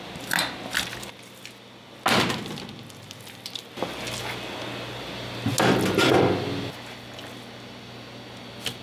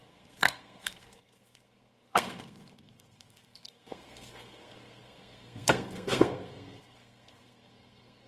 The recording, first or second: first